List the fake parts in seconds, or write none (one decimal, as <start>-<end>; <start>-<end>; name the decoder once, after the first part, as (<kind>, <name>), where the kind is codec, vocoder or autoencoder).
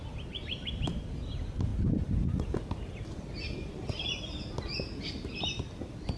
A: none